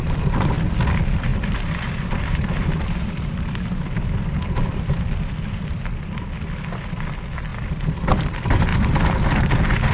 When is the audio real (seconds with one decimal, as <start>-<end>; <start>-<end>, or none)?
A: 0.0-1.3; 4.8-9.9